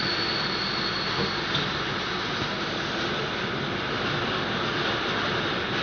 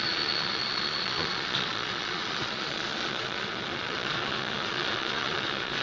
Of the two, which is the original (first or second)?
first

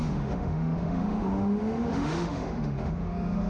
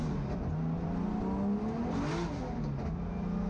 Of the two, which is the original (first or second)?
second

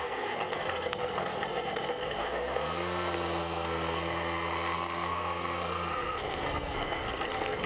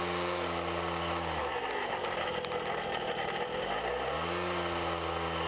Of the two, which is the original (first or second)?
second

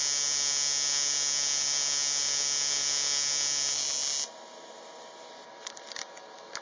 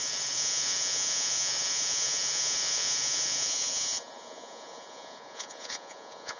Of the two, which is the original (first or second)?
first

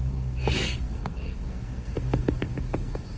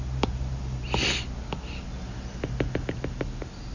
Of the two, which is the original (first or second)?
second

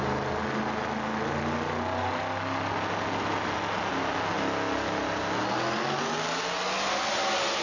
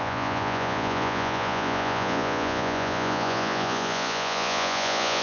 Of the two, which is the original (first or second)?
first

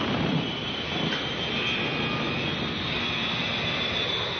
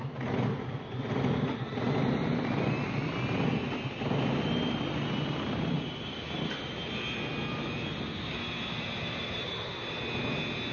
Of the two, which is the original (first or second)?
second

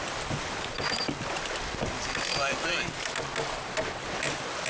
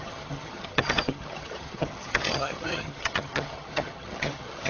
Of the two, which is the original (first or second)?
first